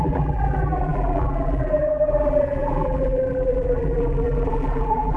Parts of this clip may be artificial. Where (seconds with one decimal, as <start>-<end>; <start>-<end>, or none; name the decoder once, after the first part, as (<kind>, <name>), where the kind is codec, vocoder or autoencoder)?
0.0-5.2 (vocoder, BigVGAN v2)